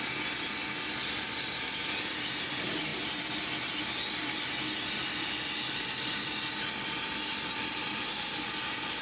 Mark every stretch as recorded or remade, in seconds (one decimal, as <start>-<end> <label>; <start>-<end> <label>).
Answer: 0.0-9.0 recorded